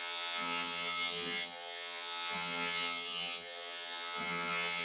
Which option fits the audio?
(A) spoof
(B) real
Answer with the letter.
A